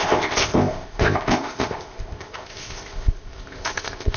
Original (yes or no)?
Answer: no